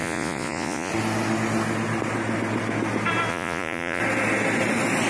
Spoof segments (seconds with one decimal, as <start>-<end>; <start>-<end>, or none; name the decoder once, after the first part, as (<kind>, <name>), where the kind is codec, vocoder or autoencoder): 0.0-0.9 (vocoder, Vocos); 3.3-4.0